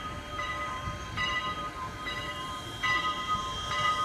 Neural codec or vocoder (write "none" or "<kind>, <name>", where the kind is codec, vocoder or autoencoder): vocoder, BigVGAN v2